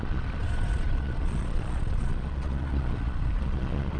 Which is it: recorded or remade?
remade